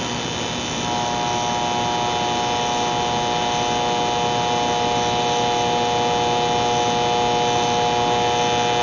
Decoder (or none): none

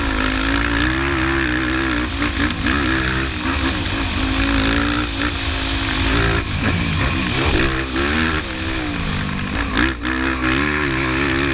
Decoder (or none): none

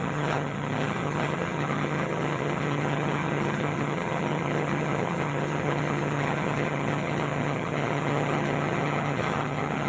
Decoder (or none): vocoder, HiFi-GAN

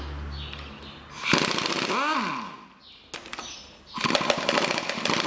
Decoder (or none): none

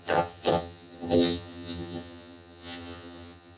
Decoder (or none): vocoder, HiFi-GAN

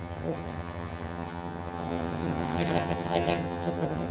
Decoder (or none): vocoder, HiFi-GAN